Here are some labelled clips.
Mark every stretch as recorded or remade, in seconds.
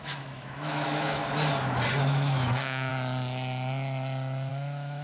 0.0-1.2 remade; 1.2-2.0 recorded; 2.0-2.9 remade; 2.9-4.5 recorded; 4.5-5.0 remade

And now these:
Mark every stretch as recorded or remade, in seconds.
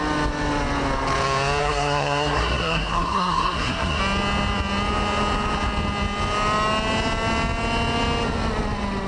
0.0-1.6 recorded; 1.6-4.0 remade; 4.0-9.1 recorded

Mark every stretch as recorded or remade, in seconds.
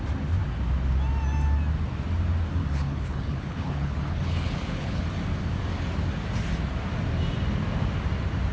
0.0-2.6 recorded; 2.6-5.0 remade; 5.0-8.5 recorded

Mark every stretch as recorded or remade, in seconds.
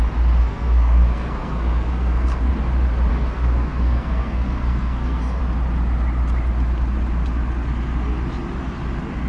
0.0-0.4 recorded; 0.4-2.5 remade; 2.5-3.1 recorded; 3.1-5.4 remade; 5.4-9.3 recorded